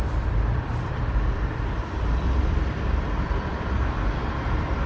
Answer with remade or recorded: remade